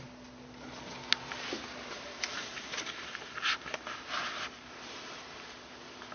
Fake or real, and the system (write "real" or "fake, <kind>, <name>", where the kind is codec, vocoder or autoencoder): real